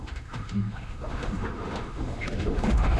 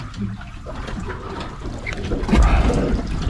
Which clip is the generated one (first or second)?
first